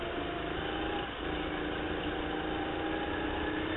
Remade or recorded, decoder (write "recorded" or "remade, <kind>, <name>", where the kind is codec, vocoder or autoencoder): recorded